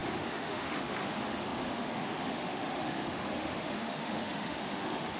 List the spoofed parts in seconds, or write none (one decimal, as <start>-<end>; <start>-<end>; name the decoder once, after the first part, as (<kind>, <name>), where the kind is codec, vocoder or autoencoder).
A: 0.0-5.2 (autoencoder, DAC-VAE)